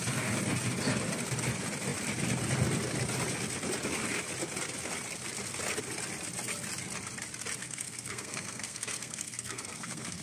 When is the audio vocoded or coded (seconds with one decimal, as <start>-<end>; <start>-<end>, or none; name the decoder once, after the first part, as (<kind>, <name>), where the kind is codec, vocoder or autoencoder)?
7.6-10.2 (codec, SNAC)